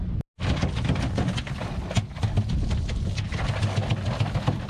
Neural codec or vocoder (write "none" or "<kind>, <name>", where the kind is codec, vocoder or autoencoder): none